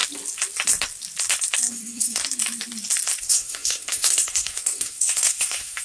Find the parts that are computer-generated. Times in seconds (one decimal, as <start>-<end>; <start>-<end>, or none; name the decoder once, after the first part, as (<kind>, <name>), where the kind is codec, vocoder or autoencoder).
1.7-2.2 (codec, SNAC); 3.2-5.8